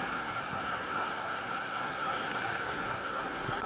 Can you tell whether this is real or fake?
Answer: fake